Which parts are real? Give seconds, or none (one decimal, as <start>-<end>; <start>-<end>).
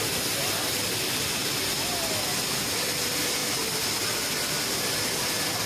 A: 0.0-5.7